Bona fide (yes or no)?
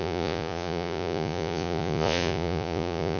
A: no